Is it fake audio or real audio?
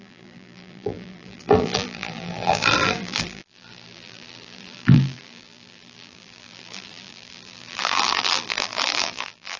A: fake